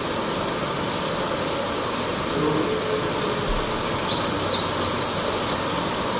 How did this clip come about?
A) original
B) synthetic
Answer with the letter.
A